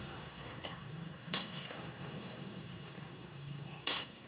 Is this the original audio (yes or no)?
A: no